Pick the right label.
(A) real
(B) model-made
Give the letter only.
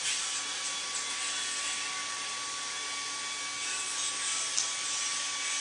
A